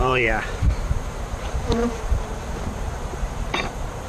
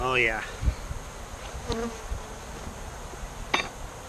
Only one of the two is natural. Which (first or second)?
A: second